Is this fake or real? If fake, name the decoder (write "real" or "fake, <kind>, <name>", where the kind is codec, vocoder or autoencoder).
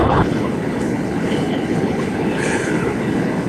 fake, codec, HILCodec